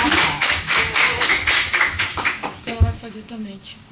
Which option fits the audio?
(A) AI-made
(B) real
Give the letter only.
A